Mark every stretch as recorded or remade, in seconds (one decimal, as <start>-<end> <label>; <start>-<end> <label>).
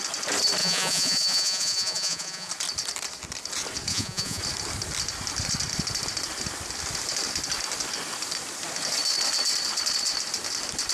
0.0-0.6 recorded; 0.6-2.5 remade; 2.5-3.9 recorded; 3.9-4.4 remade; 4.4-10.9 recorded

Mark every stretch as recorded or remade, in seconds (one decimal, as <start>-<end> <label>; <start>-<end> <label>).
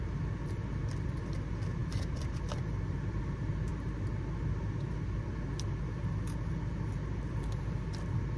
0.0-1.8 recorded; 1.8-3.2 remade; 3.2-8.4 recorded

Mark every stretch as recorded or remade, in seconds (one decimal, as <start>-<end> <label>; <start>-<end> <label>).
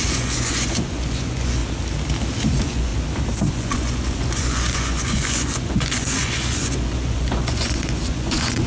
0.0-1.6 remade; 1.6-2.5 recorded; 2.5-2.9 remade; 2.9-3.5 recorded; 3.5-8.7 remade